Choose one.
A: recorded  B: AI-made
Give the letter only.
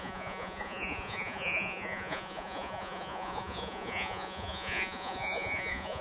B